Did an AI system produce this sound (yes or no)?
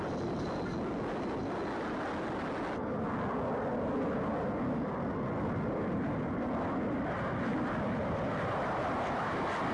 no